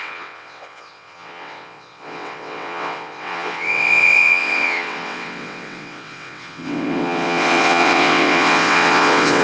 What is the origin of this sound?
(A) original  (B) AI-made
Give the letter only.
B